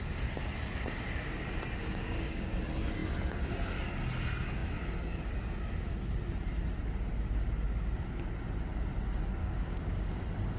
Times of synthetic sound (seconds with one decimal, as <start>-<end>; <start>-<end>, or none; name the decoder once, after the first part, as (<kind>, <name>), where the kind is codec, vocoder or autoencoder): 1.8-2.5 (codec, DAC); 9.4-10.2